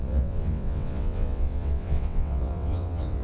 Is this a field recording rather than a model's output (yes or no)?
no